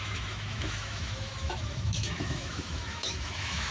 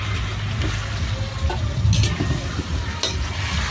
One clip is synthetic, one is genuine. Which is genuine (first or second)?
second